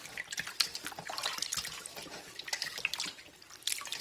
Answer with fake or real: real